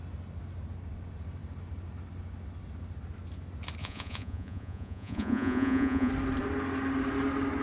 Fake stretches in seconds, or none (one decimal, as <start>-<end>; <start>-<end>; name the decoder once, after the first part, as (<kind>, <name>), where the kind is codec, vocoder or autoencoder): 3.8-6.1 (vocoder, Vocos)